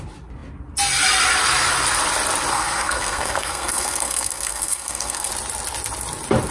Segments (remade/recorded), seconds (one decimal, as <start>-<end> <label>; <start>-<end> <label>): 0.0-2.5 recorded; 2.5-5.3 remade; 5.3-6.5 recorded